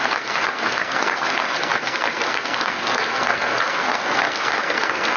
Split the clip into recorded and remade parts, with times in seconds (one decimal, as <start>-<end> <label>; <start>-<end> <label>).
0.0-5.2 remade